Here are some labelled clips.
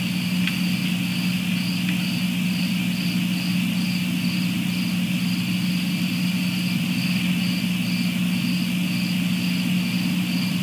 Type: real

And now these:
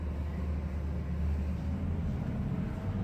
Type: real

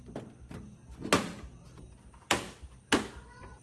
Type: real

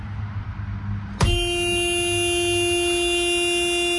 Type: real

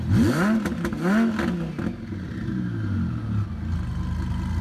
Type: real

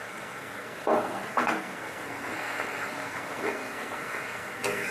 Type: fake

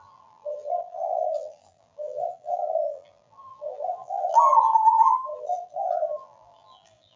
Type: fake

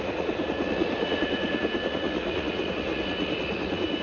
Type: fake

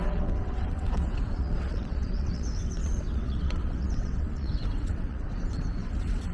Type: fake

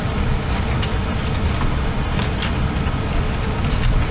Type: real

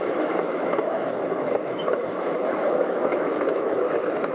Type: fake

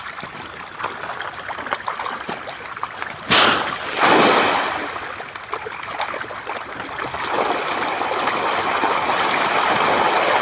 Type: real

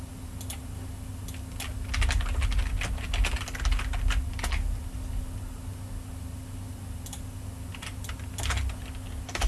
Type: real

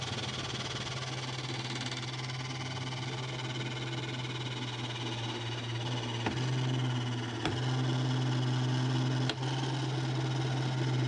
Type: real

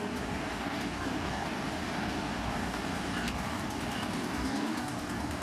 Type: fake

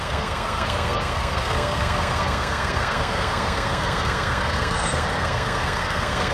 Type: fake